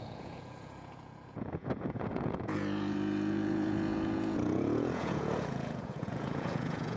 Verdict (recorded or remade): remade